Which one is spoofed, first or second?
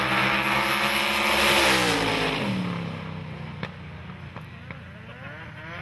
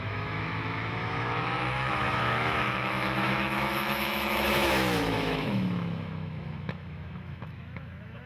second